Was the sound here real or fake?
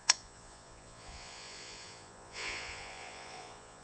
fake